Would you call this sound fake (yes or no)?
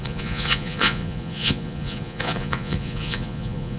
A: yes